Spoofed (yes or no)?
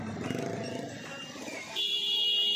yes